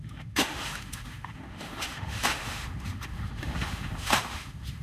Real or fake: fake